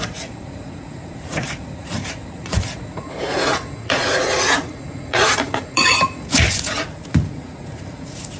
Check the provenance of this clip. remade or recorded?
remade